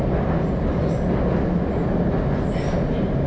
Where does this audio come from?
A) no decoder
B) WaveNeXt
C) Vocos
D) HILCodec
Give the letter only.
A